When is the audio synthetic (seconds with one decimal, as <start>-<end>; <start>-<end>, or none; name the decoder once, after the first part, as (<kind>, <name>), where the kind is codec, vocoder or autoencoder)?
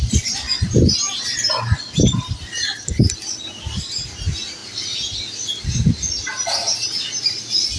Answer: none